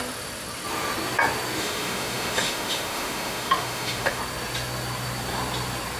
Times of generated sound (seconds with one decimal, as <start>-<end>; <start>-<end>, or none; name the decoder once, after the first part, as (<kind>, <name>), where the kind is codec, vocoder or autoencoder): 1.6-4.2 (autoencoder, DAC-VAE)